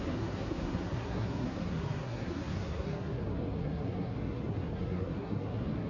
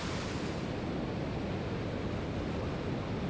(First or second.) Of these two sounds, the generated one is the first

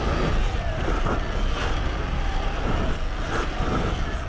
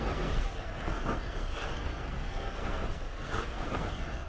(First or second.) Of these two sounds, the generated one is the second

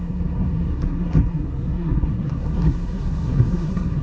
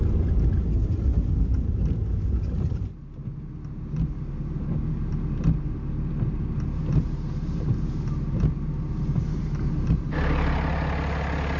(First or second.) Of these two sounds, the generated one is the first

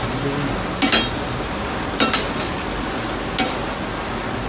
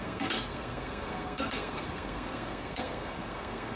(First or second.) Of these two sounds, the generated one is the second